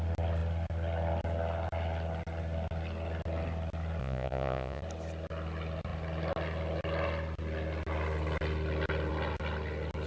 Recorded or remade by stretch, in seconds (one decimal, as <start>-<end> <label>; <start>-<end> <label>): 0.0-4.0 recorded; 4.0-4.8 remade; 4.8-10.1 recorded